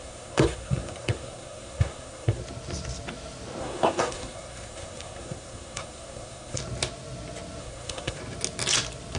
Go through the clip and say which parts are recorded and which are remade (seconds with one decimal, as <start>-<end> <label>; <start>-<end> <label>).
0.0-2.4 remade; 2.4-3.6 recorded; 3.6-6.6 remade; 6.6-7.6 recorded; 7.6-8.2 remade; 8.2-9.2 recorded